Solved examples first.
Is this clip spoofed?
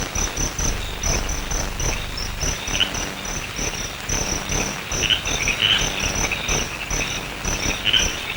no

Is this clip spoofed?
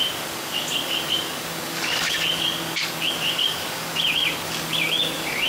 yes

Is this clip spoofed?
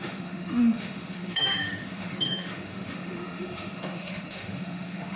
yes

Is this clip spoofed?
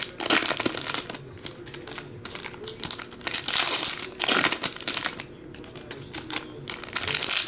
no